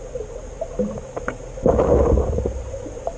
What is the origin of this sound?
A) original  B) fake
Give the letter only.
A